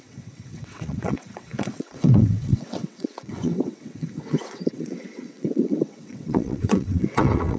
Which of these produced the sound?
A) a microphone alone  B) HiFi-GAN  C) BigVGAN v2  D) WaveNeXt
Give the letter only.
D